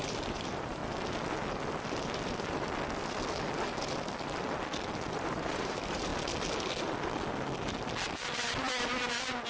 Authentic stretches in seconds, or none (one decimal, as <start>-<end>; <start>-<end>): 0.8-5.1; 6.1-9.5